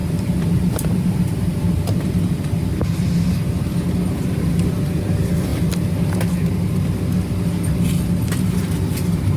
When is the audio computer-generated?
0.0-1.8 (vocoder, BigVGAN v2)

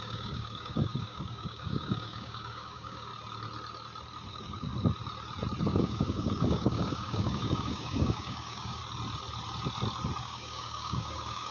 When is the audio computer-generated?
0.0-3.1 (codec, DAC); 4.3-4.7; 5.6-8.8; 10.2-11.5

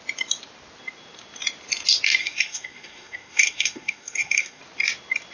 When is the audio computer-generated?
2.2-4.6 (codec, SNAC)

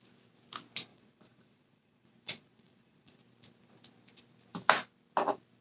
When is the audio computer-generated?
0.9-3.2 (vocoder, Vocos)

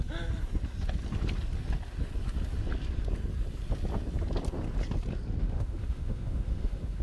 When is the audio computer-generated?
5.4-7.0 (autoencoder, DAC-VAE)

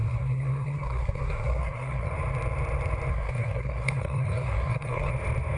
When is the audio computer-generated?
0.0-2.1 (codec, SNAC); 3.1-5.1